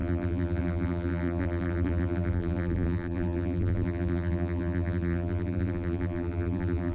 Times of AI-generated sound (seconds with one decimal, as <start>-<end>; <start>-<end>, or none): 0.0-6.9